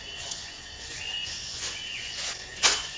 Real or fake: fake